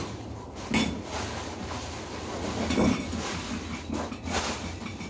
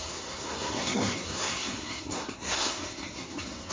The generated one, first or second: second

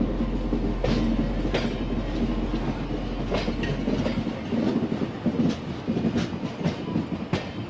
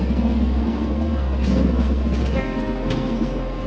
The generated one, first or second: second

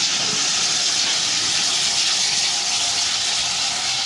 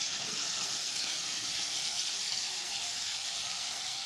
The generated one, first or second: second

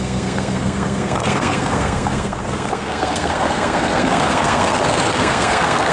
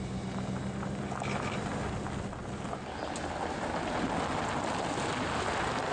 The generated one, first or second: first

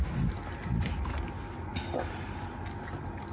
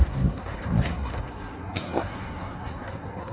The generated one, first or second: second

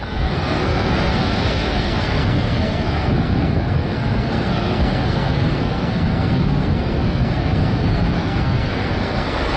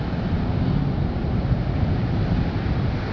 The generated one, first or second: first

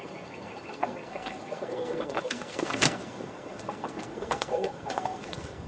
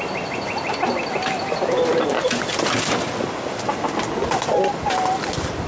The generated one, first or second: first